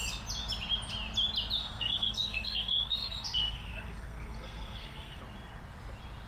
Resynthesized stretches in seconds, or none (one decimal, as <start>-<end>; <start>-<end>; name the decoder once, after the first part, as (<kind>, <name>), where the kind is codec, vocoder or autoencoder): 1.6-5.2 (codec, SNAC)